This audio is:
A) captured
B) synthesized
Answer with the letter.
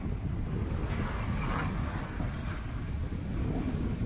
A